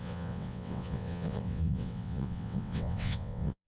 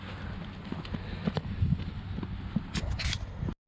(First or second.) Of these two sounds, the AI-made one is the first